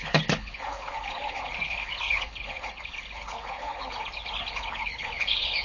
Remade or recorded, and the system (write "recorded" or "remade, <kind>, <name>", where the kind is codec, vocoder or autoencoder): remade, codec, HILCodec